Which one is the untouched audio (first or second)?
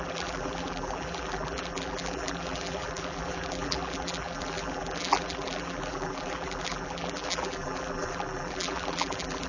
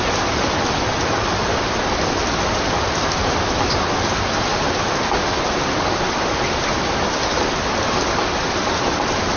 second